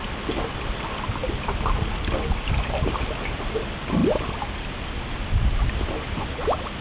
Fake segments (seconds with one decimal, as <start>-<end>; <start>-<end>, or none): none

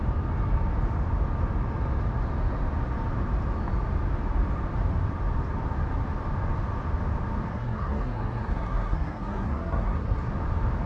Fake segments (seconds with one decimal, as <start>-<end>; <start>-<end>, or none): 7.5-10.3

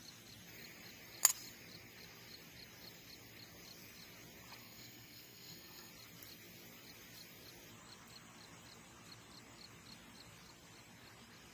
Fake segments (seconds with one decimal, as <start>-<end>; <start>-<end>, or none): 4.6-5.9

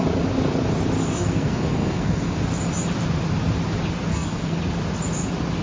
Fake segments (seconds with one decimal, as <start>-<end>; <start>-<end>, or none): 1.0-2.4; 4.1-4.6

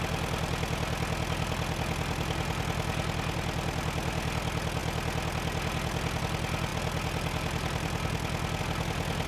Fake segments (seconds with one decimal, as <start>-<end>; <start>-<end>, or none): none

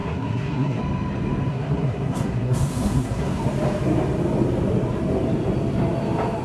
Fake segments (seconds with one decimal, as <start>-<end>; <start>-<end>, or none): 0.0-0.8; 1.5-3.4

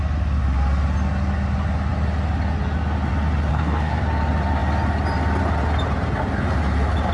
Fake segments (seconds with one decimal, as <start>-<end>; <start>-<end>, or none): 3.5-4.0